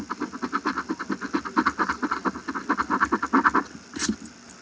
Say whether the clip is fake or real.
real